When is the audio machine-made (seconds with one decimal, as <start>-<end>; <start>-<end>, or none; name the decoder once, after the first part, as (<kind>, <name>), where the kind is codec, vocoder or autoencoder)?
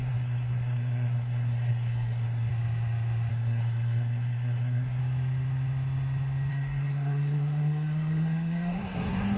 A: 0.0-2.5 (codec, SNAC); 3.3-5.0; 6.5-9.4